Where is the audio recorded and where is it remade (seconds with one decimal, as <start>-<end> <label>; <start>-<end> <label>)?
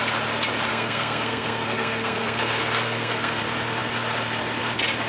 0.0-0.7 recorded; 0.7-3.4 remade; 3.4-5.1 recorded